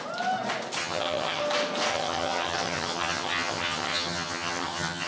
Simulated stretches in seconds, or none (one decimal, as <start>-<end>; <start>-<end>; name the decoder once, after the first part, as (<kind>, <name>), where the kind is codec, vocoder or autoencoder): 0.8-1.4 (vocoder, HiFi-GAN); 1.9-5.1